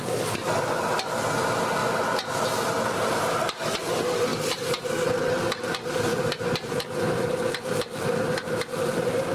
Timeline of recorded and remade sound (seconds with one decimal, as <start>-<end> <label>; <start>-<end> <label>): 0.0-9.3 recorded